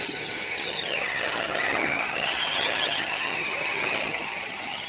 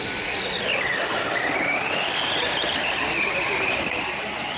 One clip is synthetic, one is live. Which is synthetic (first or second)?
first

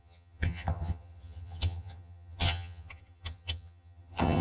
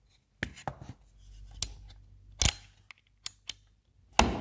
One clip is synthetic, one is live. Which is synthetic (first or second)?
first